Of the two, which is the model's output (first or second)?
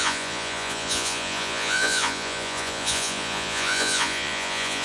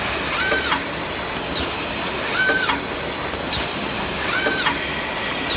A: first